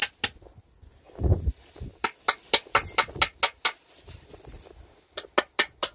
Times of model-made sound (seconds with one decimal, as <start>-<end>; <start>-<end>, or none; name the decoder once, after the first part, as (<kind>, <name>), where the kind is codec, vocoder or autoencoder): none